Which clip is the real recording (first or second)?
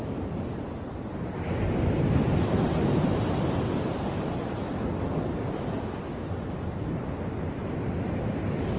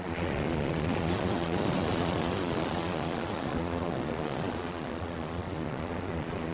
first